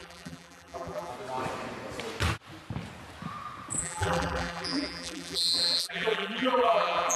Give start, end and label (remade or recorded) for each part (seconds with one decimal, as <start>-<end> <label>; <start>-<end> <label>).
0.0-1.1 remade; 1.1-3.8 recorded; 3.8-7.2 remade